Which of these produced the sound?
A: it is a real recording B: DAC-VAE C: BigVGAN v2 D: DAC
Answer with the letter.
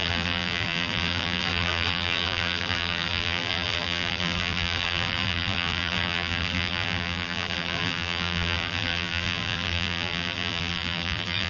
C